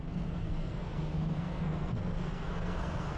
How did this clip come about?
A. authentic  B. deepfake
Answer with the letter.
B